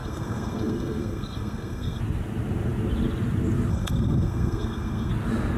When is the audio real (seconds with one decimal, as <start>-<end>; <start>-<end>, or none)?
2.0-3.7; 5.1-5.6